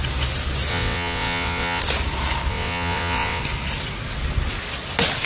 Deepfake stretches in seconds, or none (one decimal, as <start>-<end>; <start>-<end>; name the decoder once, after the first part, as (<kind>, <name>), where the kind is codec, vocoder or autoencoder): 0.7-1.8 (vocoder, WaveNeXt); 2.5-3.4